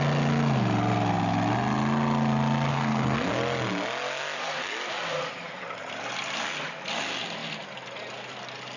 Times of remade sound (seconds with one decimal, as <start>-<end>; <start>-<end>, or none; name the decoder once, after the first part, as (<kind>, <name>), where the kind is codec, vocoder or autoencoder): 2.7-3.3 (codec, SNAC)